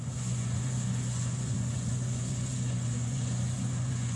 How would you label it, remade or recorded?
remade